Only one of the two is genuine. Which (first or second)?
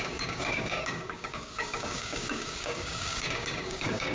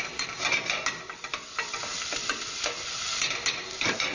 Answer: second